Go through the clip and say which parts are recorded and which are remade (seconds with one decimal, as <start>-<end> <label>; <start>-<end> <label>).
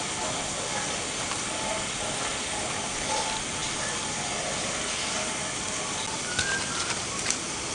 0.0-7.7 recorded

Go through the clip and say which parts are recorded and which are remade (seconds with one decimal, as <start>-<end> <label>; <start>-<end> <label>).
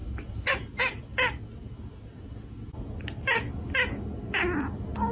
0.0-0.5 remade; 0.5-5.1 recorded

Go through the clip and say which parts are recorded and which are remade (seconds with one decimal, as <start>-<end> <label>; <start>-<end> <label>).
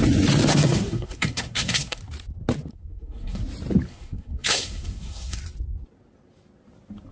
0.0-0.5 recorded; 0.5-2.0 remade; 2.0-2.7 recorded; 2.7-3.4 remade; 3.4-3.9 recorded; 3.9-5.4 remade; 5.4-7.1 recorded